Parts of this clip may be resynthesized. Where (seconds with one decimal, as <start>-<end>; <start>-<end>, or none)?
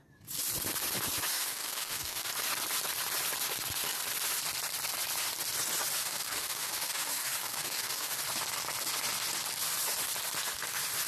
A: 1.3-2.3; 6.0-8.2